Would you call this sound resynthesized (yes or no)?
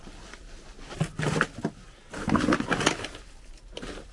no